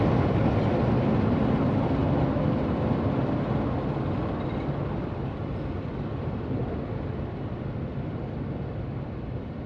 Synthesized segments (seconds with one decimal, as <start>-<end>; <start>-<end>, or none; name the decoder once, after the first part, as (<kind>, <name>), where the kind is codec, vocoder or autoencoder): none